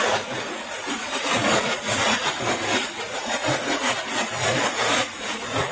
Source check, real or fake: fake